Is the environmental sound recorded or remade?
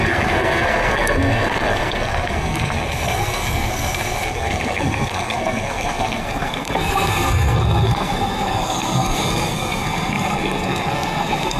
remade